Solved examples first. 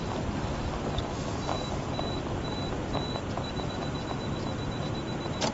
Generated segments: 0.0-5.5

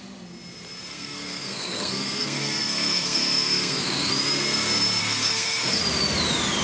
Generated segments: 0.9-4.1; 5.0-5.8

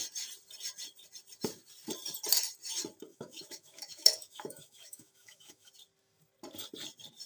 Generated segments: 3.1-5.7

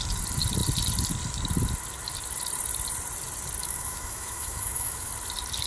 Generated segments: 3.6-5.1

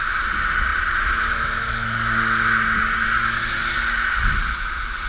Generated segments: none

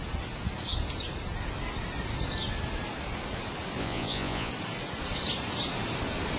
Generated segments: 3.8-4.5